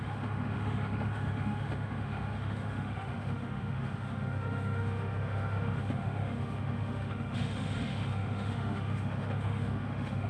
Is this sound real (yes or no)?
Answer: no